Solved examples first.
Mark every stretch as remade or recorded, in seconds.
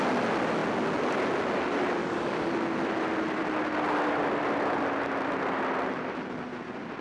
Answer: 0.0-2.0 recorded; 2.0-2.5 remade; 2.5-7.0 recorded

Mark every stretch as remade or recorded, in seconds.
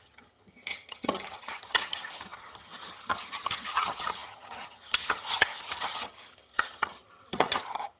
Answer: 0.0-8.0 remade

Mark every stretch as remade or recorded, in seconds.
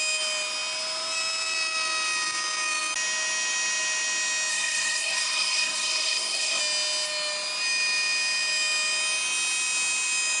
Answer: 0.0-4.5 recorded; 4.5-6.6 remade; 6.6-10.4 recorded